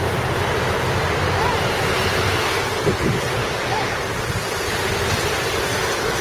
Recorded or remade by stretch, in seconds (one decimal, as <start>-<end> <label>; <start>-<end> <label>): 0.0-3.4 recorded; 3.4-4.0 remade; 4.0-6.2 recorded